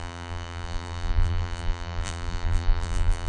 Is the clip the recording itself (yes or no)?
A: no